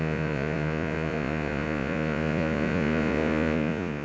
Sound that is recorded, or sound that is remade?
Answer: remade